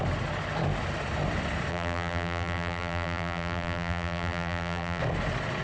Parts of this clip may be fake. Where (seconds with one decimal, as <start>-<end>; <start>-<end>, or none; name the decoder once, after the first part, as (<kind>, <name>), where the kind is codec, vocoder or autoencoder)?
1.7-5.0 (vocoder, BigVGAN v2)